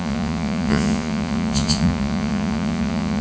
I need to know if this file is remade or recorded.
remade